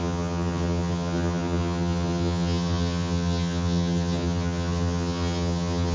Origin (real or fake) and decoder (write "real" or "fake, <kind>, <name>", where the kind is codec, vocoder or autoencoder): fake, vocoder, HiFi-GAN